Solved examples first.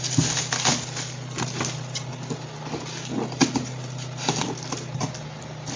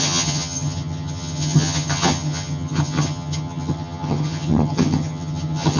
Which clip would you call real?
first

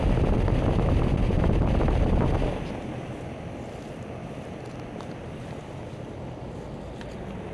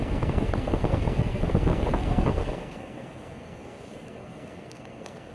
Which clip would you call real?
first